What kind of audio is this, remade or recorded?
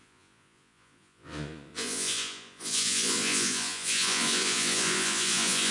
remade